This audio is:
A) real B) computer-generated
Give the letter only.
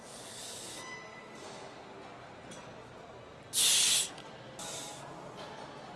A